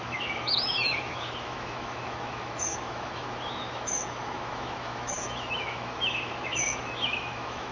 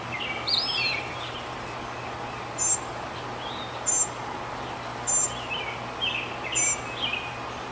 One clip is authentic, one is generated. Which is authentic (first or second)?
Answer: second